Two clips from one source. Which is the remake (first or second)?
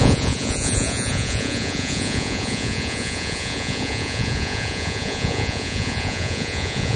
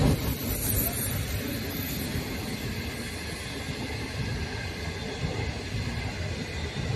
first